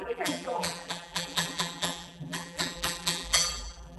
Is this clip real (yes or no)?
no